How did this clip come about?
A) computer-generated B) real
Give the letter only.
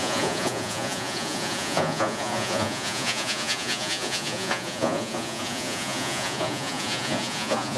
A